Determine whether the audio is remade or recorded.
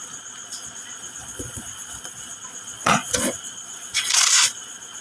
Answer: remade